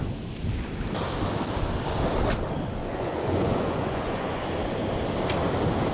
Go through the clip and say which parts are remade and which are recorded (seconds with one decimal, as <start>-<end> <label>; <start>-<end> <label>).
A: 0.0-2.8 recorded; 2.8-4.5 remade; 4.5-5.9 recorded